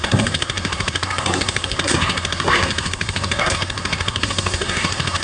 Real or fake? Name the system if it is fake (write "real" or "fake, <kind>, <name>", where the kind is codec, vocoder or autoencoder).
fake, codec, SNAC